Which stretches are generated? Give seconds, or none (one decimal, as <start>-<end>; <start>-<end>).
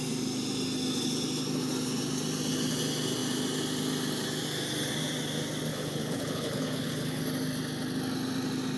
5.7-7.2